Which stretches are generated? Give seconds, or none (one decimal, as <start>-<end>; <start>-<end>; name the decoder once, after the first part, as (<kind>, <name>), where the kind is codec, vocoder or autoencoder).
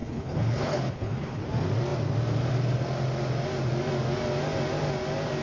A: 0.0-1.4 (codec, HILCodec)